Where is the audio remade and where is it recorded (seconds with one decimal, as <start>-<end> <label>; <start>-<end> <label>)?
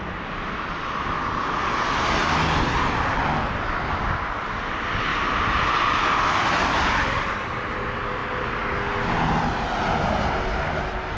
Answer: 0.0-11.2 recorded